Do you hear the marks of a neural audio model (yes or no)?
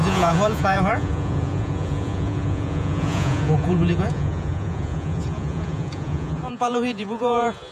yes